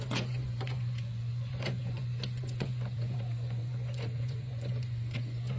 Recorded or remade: remade